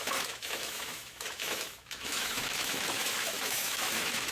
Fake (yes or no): yes